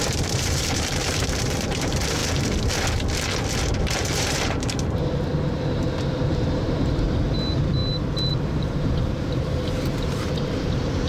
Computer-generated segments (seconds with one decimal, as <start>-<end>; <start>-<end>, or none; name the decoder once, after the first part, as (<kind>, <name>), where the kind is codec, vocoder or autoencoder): 0.0-2.2 (vocoder, BigVGAN v2); 3.5-5.3; 6.2-7.8; 8.3-11.1